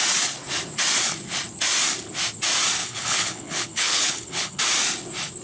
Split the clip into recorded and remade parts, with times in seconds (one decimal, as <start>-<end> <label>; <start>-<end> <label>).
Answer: 0.0-2.8 recorded; 2.8-4.6 remade; 4.6-5.4 recorded